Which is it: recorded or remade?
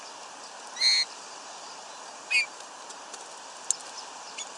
recorded